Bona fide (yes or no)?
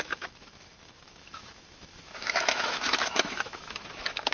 no